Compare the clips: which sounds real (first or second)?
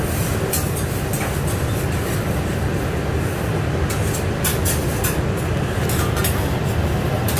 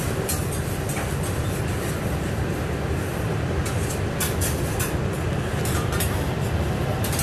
first